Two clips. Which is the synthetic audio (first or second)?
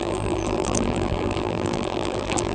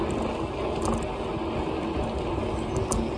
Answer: first